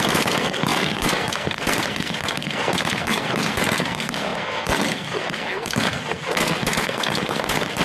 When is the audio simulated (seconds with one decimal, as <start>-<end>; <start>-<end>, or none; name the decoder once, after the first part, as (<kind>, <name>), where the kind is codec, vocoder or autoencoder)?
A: 0.0-7.8 (codec, SNAC)